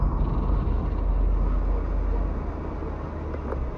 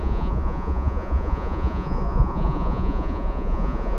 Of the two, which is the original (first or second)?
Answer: first